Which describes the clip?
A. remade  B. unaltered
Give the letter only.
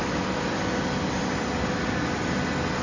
B